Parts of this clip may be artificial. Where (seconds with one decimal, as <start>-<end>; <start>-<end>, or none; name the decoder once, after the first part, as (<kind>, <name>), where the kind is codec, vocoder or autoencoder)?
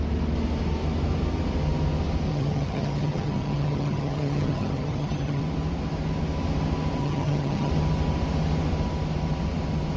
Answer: 2.3-5.4 (vocoder, HiFi-GAN); 7.0-7.7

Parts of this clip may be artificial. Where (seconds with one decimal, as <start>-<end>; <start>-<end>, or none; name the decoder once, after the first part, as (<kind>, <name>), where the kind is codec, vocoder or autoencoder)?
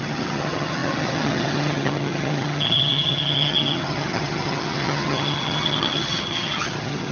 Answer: 0.0-7.1 (vocoder, HiFi-GAN)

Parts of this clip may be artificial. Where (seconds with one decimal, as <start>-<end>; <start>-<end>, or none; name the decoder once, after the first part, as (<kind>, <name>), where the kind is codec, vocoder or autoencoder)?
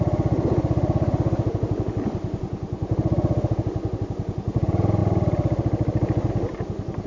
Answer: none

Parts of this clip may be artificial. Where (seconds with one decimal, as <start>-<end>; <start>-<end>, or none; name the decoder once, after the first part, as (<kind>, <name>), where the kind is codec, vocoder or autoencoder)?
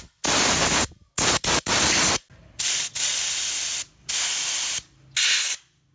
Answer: none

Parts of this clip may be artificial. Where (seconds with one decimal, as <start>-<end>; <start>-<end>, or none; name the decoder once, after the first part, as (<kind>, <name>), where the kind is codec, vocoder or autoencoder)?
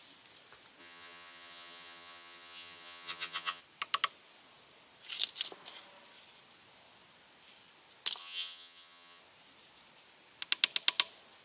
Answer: 0.8-3.6 (vocoder, HiFi-GAN); 8.2-9.2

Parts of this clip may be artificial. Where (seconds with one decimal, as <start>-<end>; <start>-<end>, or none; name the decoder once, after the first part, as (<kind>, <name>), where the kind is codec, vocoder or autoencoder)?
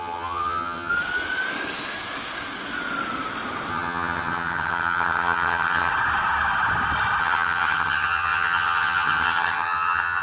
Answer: 0.0-0.9 (vocoder, HiFi-GAN); 3.7-5.9; 7.2-10.2